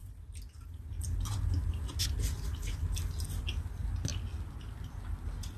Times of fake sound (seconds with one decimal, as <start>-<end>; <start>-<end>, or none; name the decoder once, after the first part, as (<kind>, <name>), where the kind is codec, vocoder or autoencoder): none

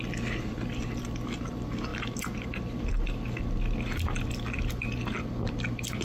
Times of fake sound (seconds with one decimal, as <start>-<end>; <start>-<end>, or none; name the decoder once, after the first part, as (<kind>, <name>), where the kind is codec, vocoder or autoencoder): none

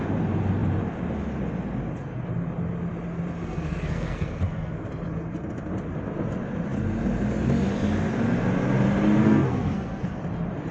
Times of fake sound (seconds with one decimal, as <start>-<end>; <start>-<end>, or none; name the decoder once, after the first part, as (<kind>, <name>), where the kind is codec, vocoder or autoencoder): 3.4-4.9 (codec, SNAC); 9.2-10.2

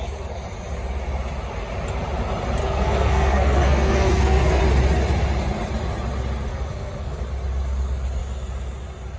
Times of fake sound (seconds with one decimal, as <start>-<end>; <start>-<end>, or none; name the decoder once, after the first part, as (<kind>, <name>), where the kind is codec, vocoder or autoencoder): 2.6-4.6 (codec, SNAC); 6.5-7.2